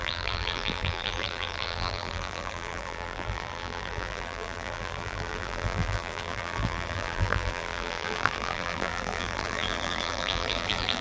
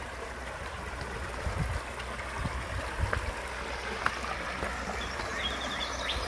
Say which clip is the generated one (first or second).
first